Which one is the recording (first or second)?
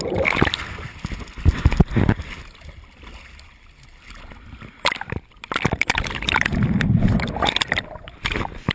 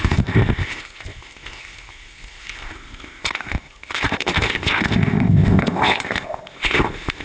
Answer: first